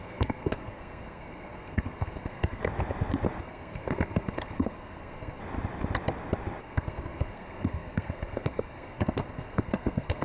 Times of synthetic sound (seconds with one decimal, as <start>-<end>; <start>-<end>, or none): 0.0-2.6; 3.4-5.4; 6.6-10.2